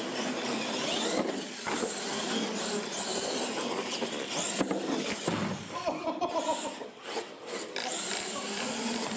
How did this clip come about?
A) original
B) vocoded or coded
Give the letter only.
A